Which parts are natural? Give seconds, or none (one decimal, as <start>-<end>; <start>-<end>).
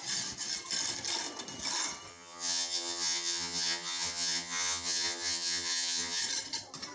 0.0-2.1; 6.2-6.9